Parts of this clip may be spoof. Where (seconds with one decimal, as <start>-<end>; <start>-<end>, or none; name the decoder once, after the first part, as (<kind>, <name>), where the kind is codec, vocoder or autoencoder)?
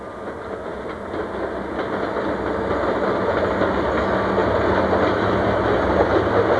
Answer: none